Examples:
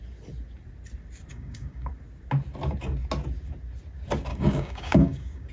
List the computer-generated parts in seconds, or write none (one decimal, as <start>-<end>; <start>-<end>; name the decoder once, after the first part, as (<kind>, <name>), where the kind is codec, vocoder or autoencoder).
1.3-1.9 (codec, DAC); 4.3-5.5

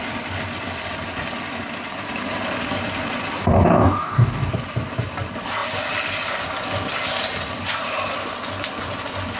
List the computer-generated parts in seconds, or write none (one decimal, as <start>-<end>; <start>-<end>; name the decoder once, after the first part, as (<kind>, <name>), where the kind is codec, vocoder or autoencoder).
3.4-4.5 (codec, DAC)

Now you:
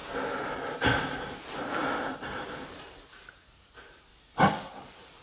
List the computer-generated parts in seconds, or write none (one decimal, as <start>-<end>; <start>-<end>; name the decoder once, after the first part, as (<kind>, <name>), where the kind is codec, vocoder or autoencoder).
4.1-4.7 (codec, DAC)

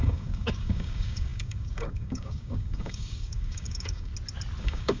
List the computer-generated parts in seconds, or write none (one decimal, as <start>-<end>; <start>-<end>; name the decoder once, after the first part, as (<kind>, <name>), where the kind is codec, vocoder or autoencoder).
0.0-4.1 (codec, DAC); 4.6-5.0